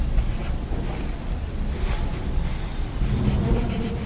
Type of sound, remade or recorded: remade